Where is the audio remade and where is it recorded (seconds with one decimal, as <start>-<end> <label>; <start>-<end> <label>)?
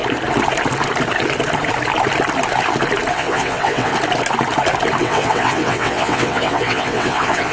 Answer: 0.0-3.1 recorded; 3.1-3.9 remade; 3.9-5.0 recorded; 5.0-7.5 remade